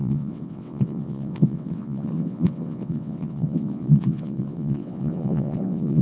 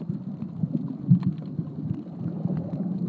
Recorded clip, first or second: second